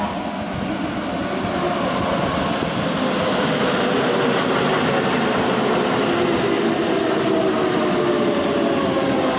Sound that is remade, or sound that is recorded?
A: recorded